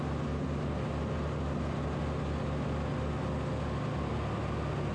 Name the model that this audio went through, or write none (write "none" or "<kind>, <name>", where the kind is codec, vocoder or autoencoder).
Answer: none